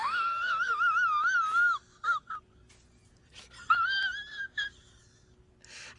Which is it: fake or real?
real